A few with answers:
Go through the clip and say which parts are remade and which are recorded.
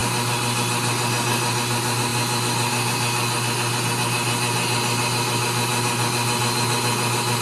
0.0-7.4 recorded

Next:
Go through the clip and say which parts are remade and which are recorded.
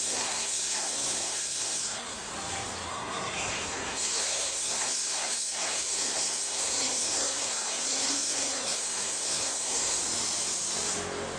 0.0-2.3 remade; 2.3-2.9 recorded; 2.9-10.0 remade; 10.0-11.4 recorded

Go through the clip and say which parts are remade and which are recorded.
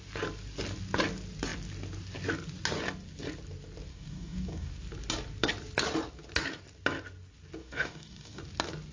0.0-3.9 recorded; 3.9-4.7 remade; 4.7-7.6 recorded; 7.6-8.4 remade; 8.4-8.9 recorded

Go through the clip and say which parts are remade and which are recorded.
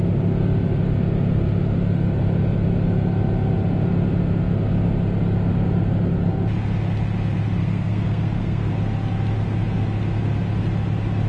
0.0-7.6 recorded; 7.6-8.6 remade; 8.6-11.3 recorded